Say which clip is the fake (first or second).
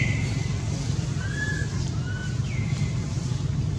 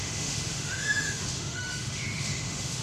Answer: second